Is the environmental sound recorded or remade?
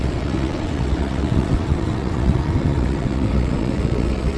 remade